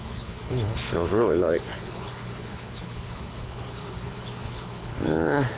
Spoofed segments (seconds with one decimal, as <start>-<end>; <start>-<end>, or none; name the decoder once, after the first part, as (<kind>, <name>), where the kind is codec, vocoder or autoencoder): 0.0-5.6 (codec, HILCodec)